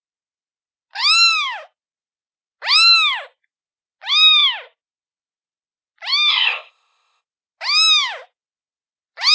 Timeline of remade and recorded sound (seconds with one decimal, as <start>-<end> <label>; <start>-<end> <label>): 0.0-6.3 recorded; 6.3-7.2 remade; 7.2-9.3 recorded